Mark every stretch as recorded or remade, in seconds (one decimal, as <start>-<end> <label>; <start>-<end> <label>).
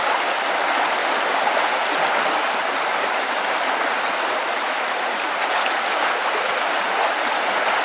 0.0-3.8 recorded; 3.8-7.8 remade